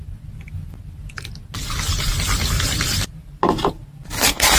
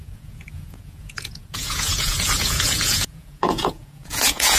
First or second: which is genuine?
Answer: first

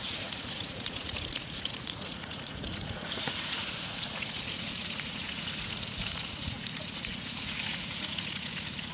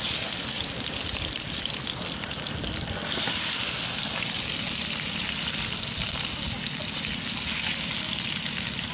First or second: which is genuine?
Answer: second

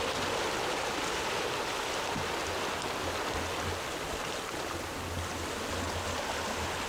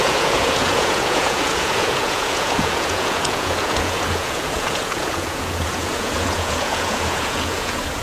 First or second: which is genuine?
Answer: first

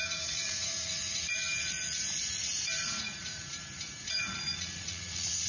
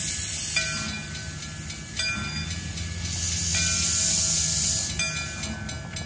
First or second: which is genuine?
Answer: second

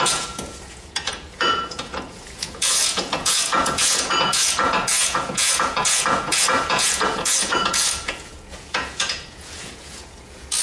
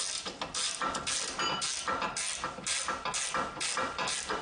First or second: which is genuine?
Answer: second